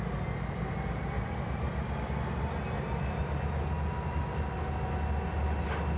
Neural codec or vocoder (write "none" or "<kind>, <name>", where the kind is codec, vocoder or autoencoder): none